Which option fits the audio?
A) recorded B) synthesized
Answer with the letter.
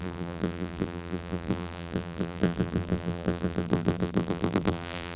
B